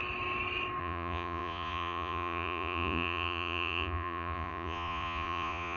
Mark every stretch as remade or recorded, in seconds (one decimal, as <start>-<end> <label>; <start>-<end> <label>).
0.0-0.8 recorded; 0.8-5.8 remade